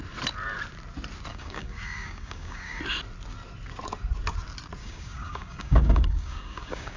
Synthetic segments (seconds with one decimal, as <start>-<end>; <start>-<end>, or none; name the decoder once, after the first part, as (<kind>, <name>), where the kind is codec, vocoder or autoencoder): 1.3-2.8 (codec, DAC); 4.8-7.0